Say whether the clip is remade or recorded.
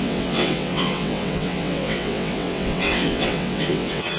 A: remade